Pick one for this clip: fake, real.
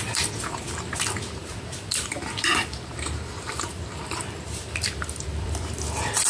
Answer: fake